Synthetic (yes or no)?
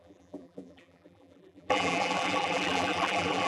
yes